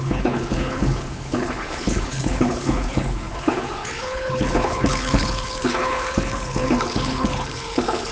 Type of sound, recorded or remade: remade